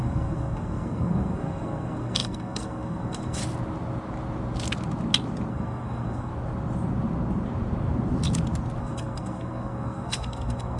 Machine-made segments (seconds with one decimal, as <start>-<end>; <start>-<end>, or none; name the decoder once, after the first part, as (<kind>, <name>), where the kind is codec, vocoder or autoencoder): 0.0-3.4 (codec, SNAC); 5.5-6.3; 8.8-10.8